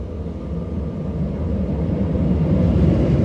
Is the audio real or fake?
real